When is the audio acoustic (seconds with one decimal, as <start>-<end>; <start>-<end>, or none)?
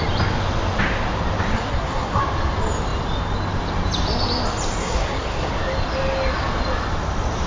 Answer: 0.0-1.5; 2.2-4.8; 5.5-7.5